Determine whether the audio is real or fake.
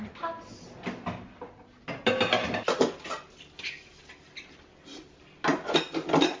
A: real